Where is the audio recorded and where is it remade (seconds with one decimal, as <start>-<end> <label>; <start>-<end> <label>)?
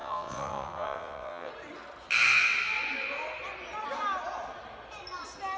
0.0-1.5 remade; 1.5-5.6 recorded